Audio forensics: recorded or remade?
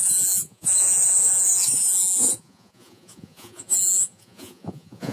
remade